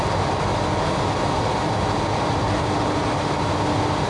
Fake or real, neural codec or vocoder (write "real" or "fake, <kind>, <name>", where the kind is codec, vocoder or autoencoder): real